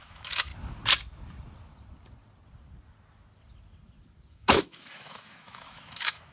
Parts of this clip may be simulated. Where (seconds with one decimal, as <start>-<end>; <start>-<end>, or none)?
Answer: 0.0-0.5; 4.3-6.3